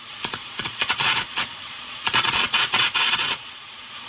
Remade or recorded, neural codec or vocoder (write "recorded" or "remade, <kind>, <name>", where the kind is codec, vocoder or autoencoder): remade, vocoder, Vocos